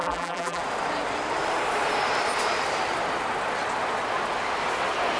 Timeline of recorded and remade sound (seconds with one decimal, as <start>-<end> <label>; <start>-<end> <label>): 0.0-0.6 remade; 0.6-5.2 recorded